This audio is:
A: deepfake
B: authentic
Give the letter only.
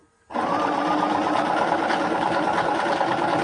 B